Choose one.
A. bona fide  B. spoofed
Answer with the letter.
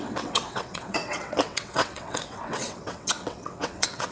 B